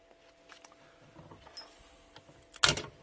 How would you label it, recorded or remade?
recorded